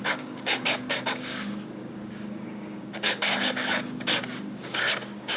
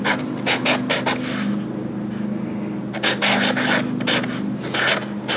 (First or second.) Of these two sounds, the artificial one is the first